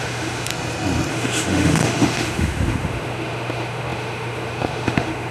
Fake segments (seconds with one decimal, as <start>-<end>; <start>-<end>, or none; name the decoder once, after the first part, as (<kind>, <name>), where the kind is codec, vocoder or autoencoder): 0.0-0.5 (autoencoder, DAC-VAE); 1.1-5.3